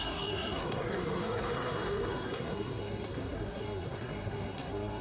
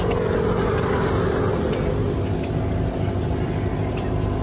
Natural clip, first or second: second